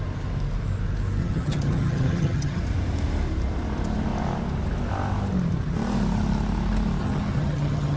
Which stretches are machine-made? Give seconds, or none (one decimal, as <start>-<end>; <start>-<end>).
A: 1.2-2.6; 7.0-8.0